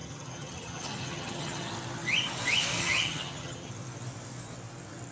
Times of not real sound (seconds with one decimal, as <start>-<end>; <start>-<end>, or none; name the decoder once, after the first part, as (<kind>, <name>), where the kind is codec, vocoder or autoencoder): 0.0-1.7 (vocoder, HiFi-GAN); 2.8-3.7